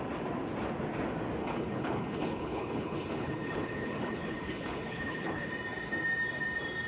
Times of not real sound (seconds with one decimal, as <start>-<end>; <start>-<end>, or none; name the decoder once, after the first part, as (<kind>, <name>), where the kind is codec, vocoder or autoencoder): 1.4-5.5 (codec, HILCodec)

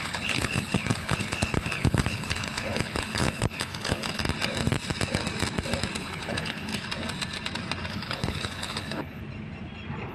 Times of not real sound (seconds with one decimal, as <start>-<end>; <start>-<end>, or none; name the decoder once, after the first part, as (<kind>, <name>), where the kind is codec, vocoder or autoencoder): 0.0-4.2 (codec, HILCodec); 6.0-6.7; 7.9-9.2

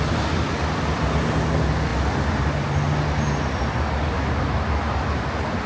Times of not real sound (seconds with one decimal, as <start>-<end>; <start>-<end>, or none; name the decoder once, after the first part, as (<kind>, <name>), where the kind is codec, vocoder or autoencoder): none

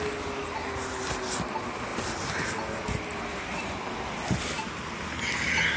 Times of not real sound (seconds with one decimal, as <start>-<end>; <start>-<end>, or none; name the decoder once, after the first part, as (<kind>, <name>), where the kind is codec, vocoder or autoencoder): none

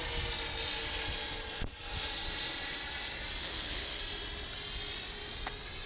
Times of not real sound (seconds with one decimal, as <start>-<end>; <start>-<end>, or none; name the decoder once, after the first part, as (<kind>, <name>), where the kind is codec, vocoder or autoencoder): 3.4-4.0 (codec, HILCodec)

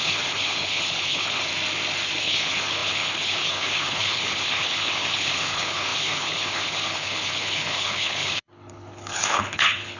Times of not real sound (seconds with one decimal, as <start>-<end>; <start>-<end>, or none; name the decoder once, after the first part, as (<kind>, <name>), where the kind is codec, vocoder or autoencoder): 0.0-1.5 (codec, HILCodec); 2.2-10.0

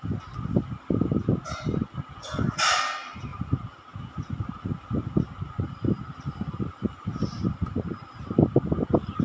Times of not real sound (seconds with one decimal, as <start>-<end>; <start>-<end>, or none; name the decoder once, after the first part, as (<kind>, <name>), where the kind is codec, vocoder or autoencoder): none

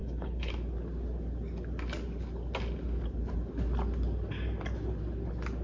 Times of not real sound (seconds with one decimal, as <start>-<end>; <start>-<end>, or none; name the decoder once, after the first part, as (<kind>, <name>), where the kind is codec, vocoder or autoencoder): 0.0-0.5 (codec, HILCodec)